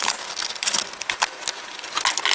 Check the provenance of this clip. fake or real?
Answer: real